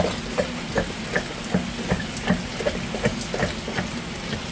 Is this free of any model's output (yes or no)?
yes